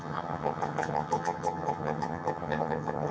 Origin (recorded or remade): remade